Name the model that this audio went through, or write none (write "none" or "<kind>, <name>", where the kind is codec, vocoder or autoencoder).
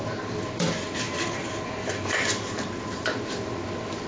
none